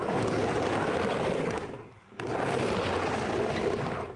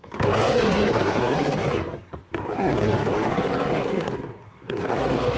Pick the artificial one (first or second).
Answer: second